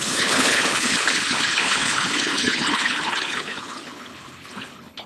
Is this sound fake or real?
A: fake